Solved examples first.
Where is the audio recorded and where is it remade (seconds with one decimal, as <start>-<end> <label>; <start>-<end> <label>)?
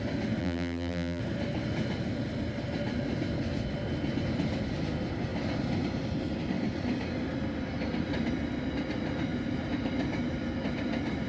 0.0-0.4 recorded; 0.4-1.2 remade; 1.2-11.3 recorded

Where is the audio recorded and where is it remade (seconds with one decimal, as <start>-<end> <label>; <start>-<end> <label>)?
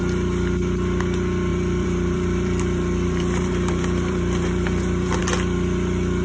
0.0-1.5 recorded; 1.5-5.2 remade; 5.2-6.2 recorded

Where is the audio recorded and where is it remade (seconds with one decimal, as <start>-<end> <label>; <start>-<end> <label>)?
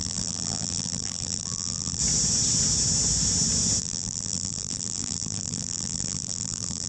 0.0-2.0 remade; 2.0-3.8 recorded; 3.8-6.9 remade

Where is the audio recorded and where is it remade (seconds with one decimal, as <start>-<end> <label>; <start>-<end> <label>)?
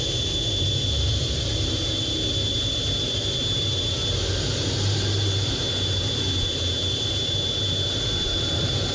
0.0-8.9 recorded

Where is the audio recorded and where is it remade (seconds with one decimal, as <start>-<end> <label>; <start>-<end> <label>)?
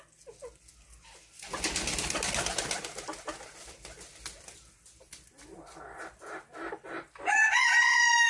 0.0-8.3 recorded